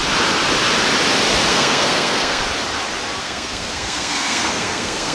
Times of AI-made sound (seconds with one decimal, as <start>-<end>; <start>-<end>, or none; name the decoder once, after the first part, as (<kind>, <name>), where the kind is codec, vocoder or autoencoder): 1.5-2.4 (codec, SNAC); 3.2-5.1